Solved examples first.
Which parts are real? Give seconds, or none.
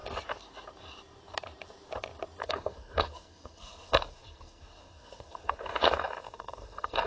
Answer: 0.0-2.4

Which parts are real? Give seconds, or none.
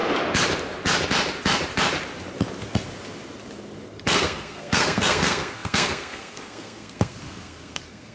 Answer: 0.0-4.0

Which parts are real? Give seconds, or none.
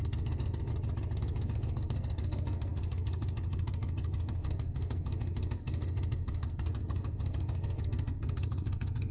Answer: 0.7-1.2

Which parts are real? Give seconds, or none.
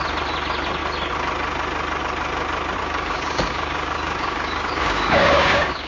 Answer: 0.0-2.8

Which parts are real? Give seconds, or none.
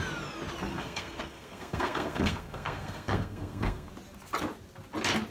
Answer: 0.0-0.7; 3.9-5.3